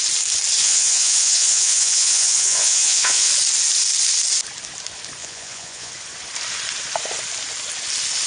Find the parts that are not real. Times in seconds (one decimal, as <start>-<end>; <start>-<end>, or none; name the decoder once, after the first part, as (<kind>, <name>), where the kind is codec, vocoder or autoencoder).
0.6-3.3 (vocoder, Vocos); 5.2-5.9